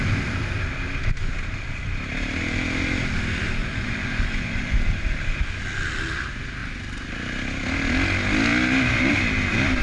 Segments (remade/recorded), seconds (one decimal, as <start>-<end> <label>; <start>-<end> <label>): 0.0-3.6 recorded; 3.6-4.8 remade; 4.8-9.8 recorded